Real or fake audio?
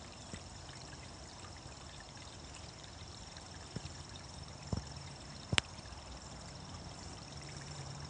fake